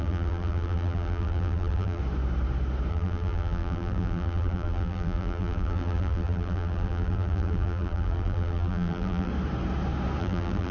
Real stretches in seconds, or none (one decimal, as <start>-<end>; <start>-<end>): 2.0-2.9; 9.3-10.2